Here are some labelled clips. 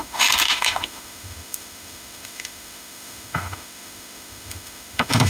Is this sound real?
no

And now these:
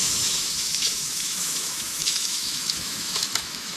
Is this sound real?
no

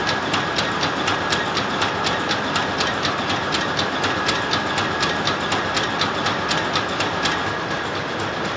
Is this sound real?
yes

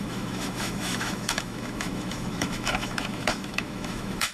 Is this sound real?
no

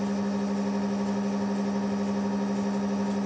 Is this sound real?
yes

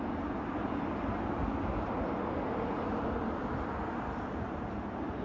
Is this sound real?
yes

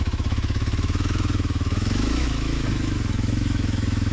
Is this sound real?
no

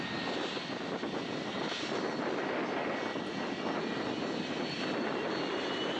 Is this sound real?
yes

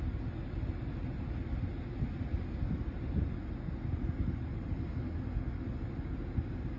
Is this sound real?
yes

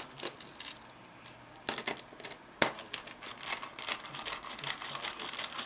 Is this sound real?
yes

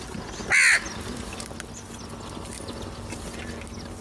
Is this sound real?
yes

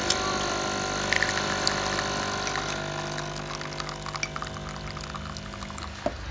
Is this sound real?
yes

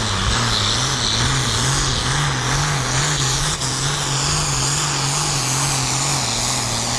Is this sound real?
yes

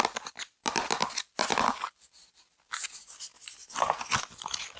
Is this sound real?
yes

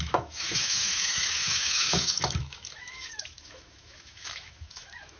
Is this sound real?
no